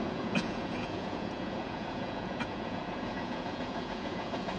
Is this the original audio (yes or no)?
no